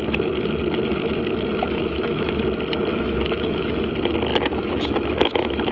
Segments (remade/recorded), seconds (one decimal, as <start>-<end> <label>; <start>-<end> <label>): 0.0-1.6 recorded; 1.6-2.4 remade; 2.4-2.9 recorded; 2.9-3.9 remade; 3.9-4.3 recorded; 4.3-5.7 remade